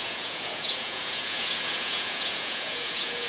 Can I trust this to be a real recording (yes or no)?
no